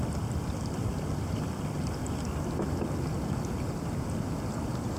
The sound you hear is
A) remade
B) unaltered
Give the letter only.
B